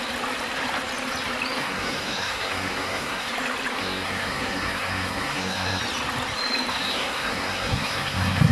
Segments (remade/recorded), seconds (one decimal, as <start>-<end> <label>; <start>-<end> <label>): 0.0-1.6 recorded; 1.6-3.3 remade; 3.3-3.8 recorded; 3.8-5.8 remade; 5.8-6.7 recorded; 6.7-8.5 remade